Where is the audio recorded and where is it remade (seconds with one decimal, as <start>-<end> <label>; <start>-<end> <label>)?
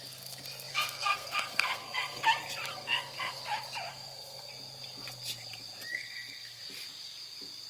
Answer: 0.0-0.7 recorded; 0.7-2.2 remade; 2.2-2.7 recorded; 2.7-3.4 remade; 3.4-3.9 recorded; 3.9-4.5 remade; 4.5-5.9 recorded; 5.9-6.6 remade; 6.6-7.7 recorded